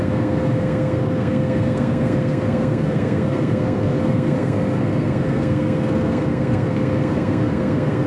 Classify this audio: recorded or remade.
remade